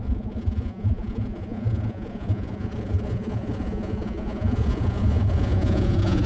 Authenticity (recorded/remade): remade